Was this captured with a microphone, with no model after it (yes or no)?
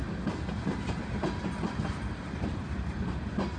yes